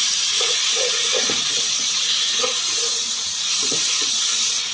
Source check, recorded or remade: remade